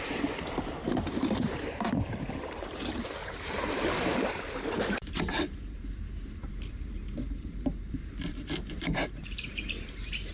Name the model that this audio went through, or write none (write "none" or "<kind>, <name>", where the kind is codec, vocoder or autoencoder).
vocoder, BigVGAN v2